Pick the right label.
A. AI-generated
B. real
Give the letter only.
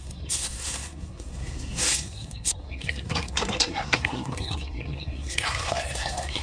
A